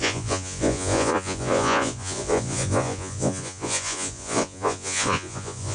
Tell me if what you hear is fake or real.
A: fake